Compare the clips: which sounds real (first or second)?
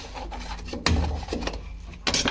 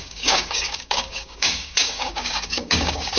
first